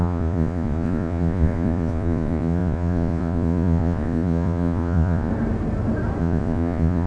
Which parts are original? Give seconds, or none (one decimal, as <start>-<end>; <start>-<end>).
5.3-6.2